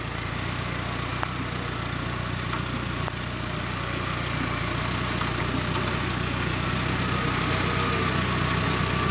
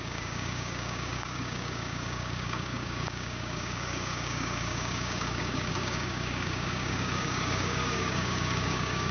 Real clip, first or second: first